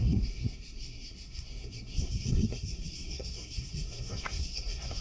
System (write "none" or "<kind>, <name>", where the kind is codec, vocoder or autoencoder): codec, SNAC